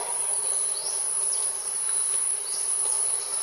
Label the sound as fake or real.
fake